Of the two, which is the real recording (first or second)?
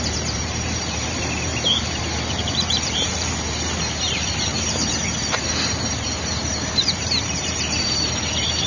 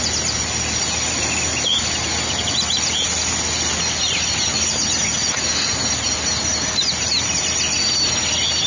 second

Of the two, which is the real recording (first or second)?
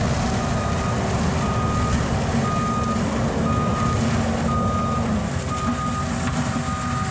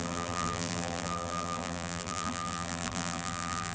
first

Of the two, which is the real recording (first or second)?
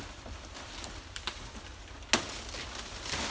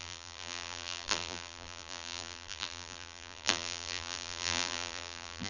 first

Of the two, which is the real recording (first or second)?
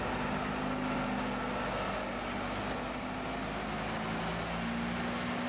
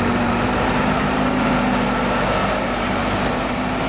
first